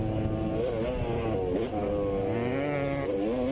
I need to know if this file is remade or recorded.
recorded